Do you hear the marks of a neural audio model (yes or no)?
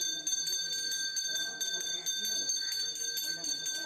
no